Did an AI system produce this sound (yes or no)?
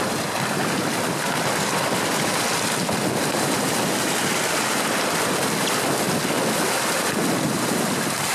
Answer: no